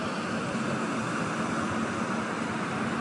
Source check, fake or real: real